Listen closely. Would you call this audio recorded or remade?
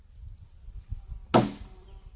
recorded